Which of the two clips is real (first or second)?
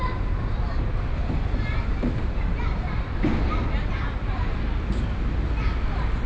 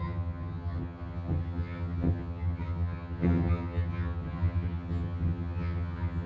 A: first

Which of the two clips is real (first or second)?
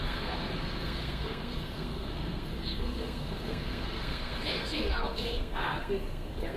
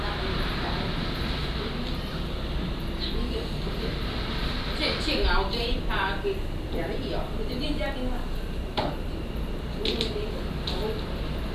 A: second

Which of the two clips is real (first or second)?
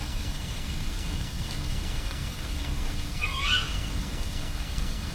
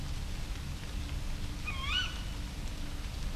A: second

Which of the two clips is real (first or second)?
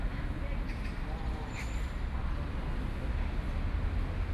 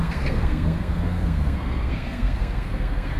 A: first